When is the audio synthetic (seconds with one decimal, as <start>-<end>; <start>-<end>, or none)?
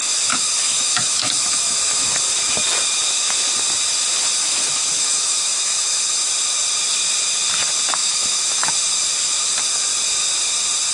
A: 0.0-2.2; 4.4-6.3; 8.0-8.7